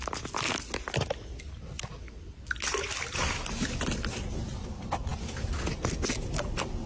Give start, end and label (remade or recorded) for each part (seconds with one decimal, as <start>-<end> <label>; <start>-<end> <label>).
0.0-6.9 recorded